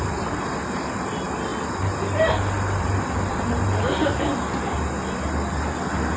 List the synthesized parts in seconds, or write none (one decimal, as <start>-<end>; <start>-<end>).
none